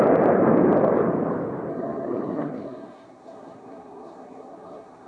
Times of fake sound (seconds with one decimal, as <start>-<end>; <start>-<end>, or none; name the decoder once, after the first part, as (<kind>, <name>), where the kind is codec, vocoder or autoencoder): 1.7-5.1 (codec, SNAC)